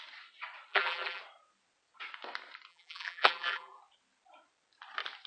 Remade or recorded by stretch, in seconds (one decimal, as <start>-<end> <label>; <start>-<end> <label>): 0.0-0.7 recorded; 0.7-1.2 remade; 1.2-2.7 recorded; 2.7-3.8 remade; 3.8-5.3 recorded